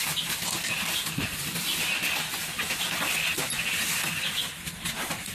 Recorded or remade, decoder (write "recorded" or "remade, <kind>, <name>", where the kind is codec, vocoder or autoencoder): recorded